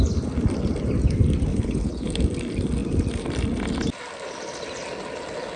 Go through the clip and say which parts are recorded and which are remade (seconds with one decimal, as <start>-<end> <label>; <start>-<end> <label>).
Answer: 0.0-1.5 recorded; 1.5-2.1 remade; 2.1-5.6 recorded